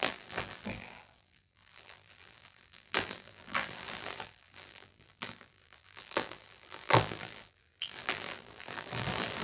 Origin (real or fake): fake